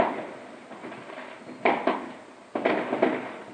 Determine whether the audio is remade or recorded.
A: recorded